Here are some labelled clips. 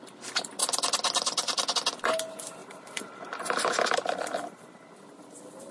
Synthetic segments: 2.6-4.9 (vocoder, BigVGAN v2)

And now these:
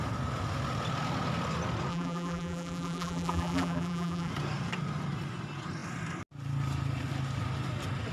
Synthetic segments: 1.9-4.3 (vocoder, BigVGAN v2)

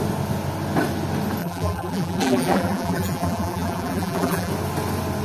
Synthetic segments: 1.4-4.5 (vocoder, BigVGAN v2)

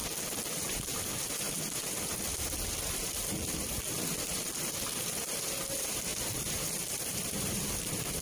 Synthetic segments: 0.6-8.2 (vocoder, BigVGAN v2)

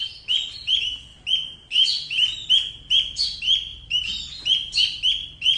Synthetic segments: 3.7-5.0 (vocoder, BigVGAN v2)